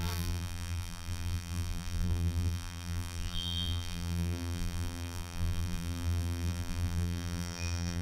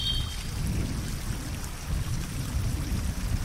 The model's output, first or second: first